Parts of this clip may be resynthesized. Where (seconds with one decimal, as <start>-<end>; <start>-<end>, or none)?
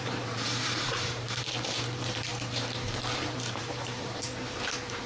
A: 0.0-5.1